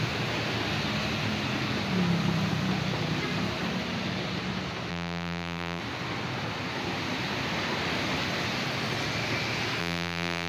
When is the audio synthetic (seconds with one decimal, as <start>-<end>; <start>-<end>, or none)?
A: 4.9-5.8; 9.8-10.5